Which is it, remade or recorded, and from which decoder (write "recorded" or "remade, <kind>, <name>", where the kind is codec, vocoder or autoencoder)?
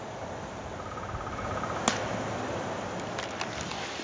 recorded